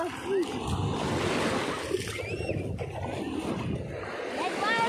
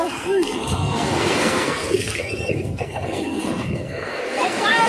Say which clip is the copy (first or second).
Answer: second